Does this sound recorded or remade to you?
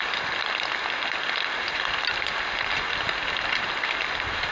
recorded